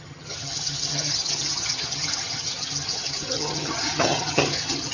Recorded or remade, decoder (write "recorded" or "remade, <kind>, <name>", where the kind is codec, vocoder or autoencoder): remade, vocoder, HiFi-GAN